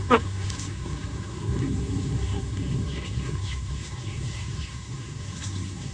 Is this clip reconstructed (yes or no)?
yes